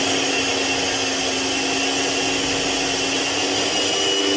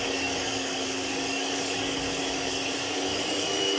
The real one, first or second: first